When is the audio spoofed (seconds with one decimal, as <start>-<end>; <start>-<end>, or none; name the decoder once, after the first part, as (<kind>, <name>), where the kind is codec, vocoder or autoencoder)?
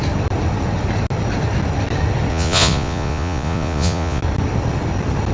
2.3-4.2 (vocoder, Vocos)